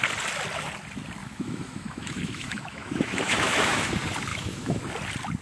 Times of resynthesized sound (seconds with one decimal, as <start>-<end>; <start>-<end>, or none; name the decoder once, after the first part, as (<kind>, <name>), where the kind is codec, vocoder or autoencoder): 1.2-3.9 (autoencoder, DAC-VAE); 4.3-4.8